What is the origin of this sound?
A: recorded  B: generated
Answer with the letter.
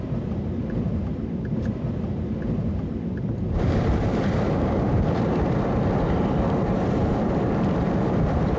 B